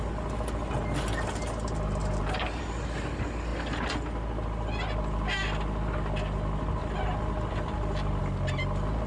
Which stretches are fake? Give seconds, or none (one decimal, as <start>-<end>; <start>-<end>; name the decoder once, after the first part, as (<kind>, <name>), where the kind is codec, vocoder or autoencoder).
2.0-2.6 (vocoder, BigVGAN v2)